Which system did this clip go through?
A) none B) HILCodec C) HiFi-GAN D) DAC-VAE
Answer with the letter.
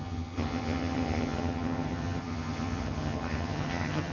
C